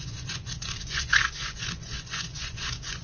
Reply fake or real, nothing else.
fake